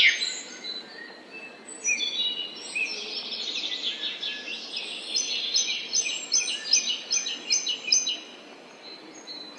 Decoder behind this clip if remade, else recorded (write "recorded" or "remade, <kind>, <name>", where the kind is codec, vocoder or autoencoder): recorded